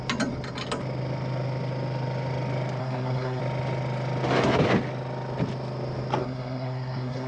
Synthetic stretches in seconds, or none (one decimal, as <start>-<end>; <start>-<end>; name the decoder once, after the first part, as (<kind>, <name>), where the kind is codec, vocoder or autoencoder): 2.8-3.4 (codec, SNAC); 6.2-7.3